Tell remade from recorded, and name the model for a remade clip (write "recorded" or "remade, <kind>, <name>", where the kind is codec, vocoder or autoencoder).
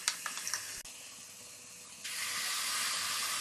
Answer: recorded